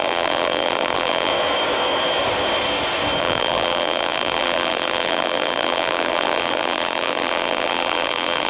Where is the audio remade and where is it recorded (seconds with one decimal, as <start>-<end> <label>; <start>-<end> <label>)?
0.0-1.3 remade; 1.3-3.2 recorded; 3.2-8.5 remade